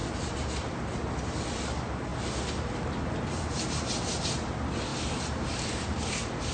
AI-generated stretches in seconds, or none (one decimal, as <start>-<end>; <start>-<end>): 4.9-6.1